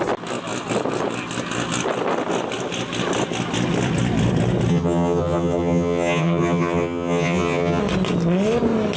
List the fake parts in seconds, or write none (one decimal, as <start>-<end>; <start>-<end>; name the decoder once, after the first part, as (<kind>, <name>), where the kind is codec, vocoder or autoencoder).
4.7-7.8 (vocoder, HiFi-GAN)